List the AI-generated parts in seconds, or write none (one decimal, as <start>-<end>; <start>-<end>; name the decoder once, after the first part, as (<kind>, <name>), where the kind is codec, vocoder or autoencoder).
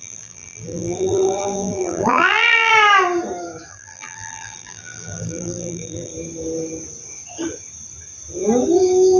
0.0-2.7 (vocoder, BigVGAN v2); 3.7-6.1